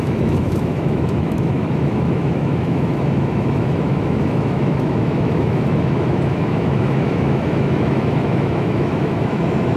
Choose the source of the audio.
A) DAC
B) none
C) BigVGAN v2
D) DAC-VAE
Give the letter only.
D